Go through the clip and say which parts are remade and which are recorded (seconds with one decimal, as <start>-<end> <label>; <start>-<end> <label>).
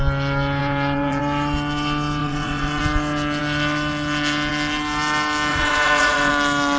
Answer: 0.0-0.6 recorded; 0.6-1.2 remade; 1.2-2.2 recorded; 2.2-2.8 remade; 2.8-5.5 recorded; 5.5-6.3 remade; 6.3-6.8 recorded